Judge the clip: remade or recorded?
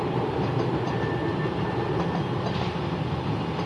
recorded